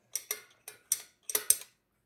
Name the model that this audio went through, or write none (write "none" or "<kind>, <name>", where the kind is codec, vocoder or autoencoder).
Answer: none